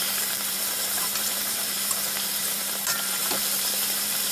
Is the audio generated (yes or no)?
yes